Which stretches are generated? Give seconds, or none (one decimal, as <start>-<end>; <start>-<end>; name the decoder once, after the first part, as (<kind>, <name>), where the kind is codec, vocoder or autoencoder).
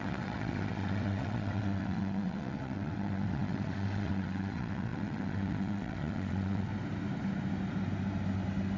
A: 0.0-6.7 (vocoder, WaveNeXt)